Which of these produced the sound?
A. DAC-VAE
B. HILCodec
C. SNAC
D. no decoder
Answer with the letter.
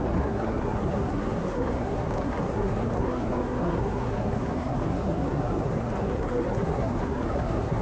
C